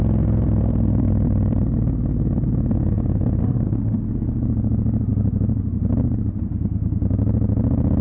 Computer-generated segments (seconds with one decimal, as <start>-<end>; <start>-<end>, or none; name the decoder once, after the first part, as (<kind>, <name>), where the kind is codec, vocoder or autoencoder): 0.6-1.1 (codec, SNAC); 3.4-4.0